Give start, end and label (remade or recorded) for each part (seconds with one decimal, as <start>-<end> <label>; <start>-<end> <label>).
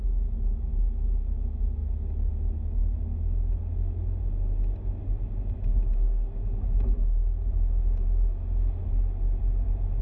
0.0-10.0 recorded